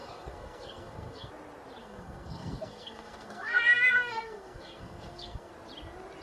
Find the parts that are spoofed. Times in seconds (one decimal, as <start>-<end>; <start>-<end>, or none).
0.0-1.3; 1.8-5.5